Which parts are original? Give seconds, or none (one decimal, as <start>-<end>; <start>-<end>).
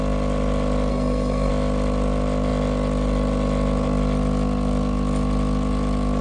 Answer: 0.0-0.9; 1.5-6.2